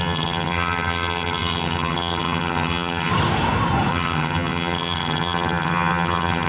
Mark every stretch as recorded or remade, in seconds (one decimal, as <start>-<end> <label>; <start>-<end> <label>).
0.0-3.1 remade; 3.1-3.9 recorded; 3.9-6.5 remade